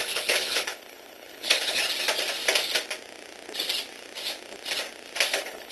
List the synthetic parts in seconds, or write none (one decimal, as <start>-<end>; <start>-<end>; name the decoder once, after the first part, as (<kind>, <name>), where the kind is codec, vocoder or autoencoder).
0.0-1.8 (codec, HILCodec); 5.2-5.7